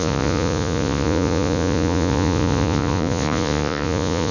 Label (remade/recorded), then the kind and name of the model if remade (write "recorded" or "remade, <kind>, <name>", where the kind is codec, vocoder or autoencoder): remade, vocoder, Vocos